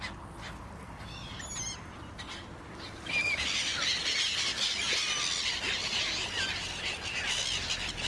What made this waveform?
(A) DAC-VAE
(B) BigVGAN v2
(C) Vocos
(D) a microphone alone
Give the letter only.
D